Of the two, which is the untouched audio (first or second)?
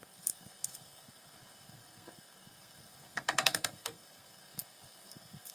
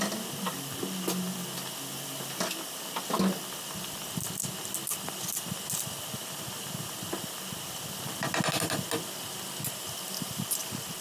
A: second